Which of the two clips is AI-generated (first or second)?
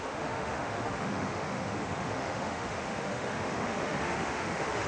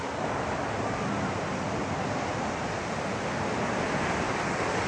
first